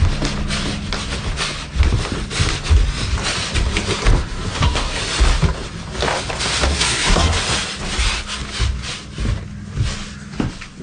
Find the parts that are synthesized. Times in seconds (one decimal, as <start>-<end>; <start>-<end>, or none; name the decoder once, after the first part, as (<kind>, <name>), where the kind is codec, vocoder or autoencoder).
4.2-5.0 (codec, SNAC); 6.7-7.4